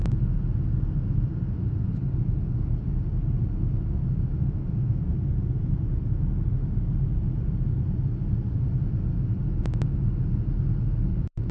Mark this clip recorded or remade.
recorded